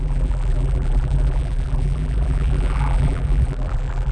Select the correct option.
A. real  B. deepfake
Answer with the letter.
B